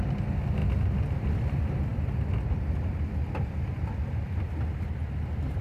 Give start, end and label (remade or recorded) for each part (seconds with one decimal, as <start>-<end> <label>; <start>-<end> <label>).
0.0-5.6 recorded